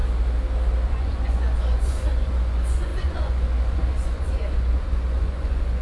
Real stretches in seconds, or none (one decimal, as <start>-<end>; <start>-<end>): 0.0-0.9